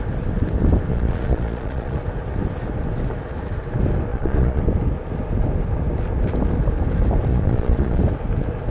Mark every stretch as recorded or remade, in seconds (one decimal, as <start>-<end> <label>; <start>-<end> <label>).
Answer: 0.0-0.9 recorded; 0.9-2.0 remade; 2.0-4.1 recorded; 4.1-4.6 remade; 4.6-7.3 recorded; 7.3-8.0 remade; 8.0-8.7 recorded